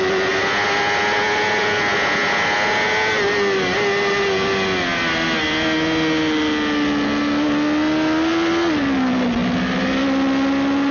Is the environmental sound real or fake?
real